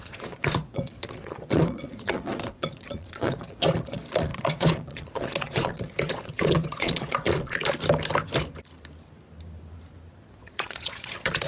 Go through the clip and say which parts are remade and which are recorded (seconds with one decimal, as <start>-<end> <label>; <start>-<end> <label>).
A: 0.0-7.6 remade; 7.6-10.2 recorded; 10.2-11.5 remade